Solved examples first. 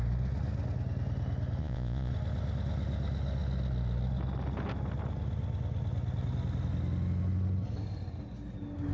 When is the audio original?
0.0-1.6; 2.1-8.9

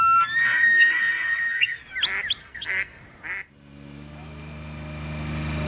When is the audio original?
0.0-0.4; 1.8-2.4; 3.0-5.7

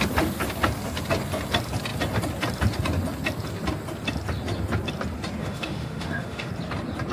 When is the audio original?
0.0-5.4; 6.5-7.1

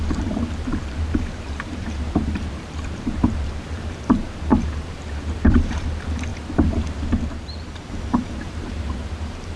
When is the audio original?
4.5-5.5; 6.3-7.2

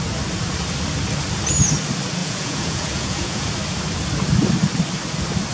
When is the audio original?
0.0-2.2; 3.5-5.5